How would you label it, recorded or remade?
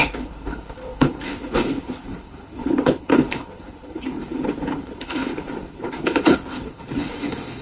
remade